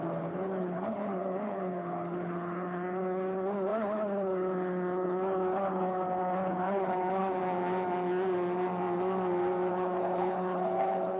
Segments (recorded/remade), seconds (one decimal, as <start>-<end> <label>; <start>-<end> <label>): 0.0-7.4 remade; 7.4-9.7 recorded; 9.7-11.2 remade